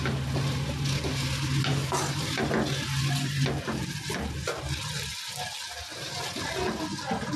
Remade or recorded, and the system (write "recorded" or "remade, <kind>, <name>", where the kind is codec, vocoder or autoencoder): recorded